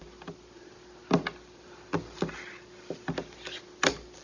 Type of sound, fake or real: real